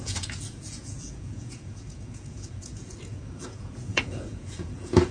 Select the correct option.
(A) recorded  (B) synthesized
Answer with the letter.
B